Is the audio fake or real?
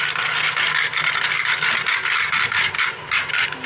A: real